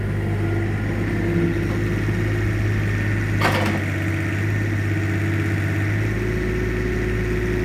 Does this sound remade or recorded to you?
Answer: recorded